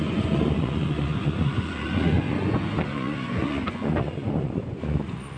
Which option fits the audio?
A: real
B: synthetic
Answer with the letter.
B